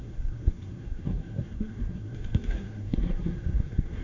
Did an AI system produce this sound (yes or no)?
yes